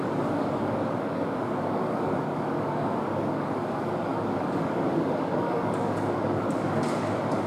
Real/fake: fake